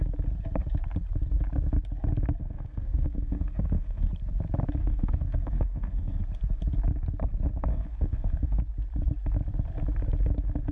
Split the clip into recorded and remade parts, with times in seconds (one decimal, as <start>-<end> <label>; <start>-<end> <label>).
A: 0.0-2.4 recorded; 2.4-4.1 remade; 4.1-4.8 recorded; 4.8-6.2 remade; 6.2-7.7 recorded; 7.7-8.6 remade; 8.6-10.7 recorded